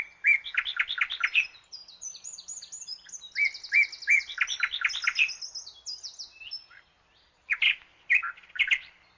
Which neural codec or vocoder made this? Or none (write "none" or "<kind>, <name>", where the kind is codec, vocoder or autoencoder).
none